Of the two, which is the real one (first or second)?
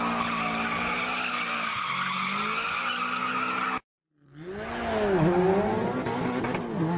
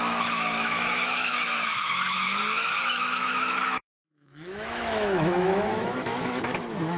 first